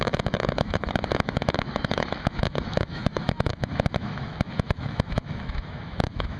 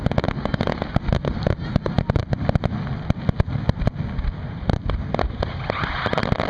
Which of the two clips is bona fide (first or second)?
second